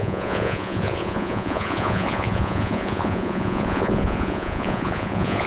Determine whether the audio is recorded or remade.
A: remade